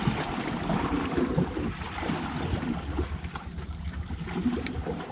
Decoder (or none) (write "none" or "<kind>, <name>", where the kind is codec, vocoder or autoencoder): vocoder, BigVGAN v2